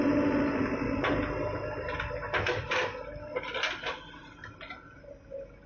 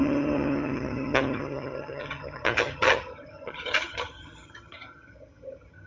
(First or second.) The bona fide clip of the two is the first